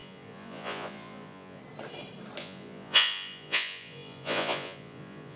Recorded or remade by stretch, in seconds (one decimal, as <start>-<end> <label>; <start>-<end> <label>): 0.0-1.6 remade; 1.6-2.4 recorded; 2.4-5.4 remade